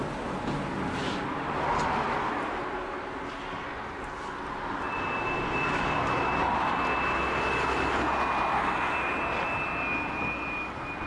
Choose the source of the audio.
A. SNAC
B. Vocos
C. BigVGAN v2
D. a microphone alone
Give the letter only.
D